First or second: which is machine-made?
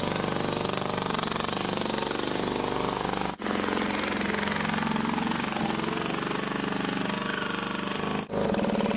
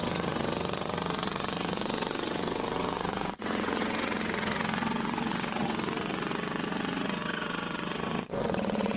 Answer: second